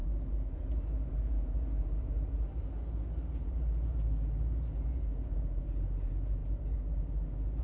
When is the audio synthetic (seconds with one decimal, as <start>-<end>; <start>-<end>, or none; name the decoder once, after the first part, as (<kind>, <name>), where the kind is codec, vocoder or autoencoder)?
0.0-7.6 (vocoder, BigVGAN v2)